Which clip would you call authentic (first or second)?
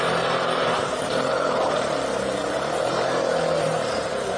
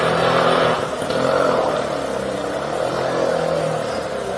second